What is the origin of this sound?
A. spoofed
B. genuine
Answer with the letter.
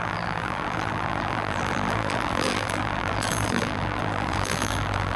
A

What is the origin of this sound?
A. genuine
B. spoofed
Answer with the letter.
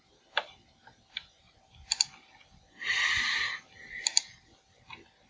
A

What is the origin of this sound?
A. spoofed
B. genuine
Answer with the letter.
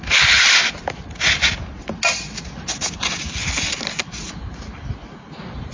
B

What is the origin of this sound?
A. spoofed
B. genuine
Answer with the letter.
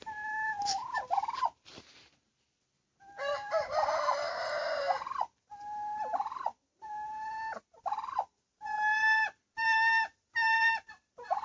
B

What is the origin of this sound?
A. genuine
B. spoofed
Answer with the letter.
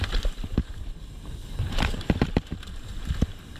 B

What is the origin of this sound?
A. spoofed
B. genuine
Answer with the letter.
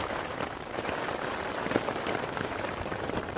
A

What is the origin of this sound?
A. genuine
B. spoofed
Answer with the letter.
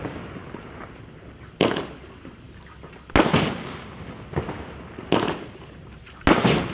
A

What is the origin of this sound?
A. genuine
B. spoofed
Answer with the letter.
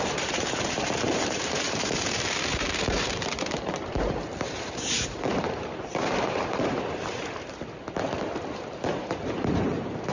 B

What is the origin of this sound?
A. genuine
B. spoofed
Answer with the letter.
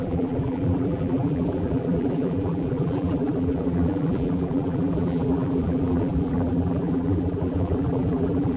B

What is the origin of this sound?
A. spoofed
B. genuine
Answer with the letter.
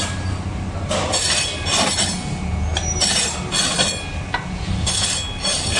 B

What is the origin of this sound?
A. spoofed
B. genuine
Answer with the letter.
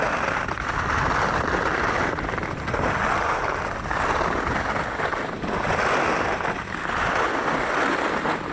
B